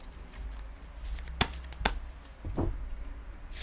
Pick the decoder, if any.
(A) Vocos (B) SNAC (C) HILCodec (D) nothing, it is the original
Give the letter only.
D